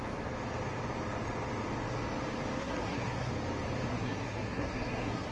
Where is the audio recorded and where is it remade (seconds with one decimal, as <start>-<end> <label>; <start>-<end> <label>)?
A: 0.0-2.6 recorded; 2.6-3.3 remade; 3.3-3.9 recorded; 3.9-5.3 remade